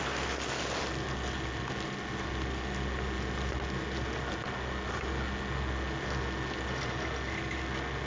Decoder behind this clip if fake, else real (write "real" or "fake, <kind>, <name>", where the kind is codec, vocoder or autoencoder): real